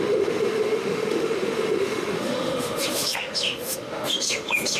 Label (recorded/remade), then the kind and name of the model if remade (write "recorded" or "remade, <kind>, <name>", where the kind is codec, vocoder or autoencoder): remade, autoencoder, DAC-VAE